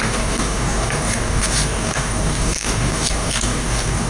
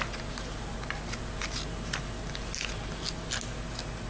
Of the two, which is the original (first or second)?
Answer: second